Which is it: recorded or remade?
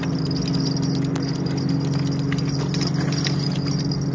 recorded